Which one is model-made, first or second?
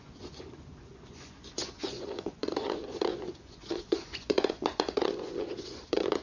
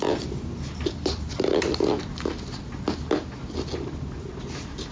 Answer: first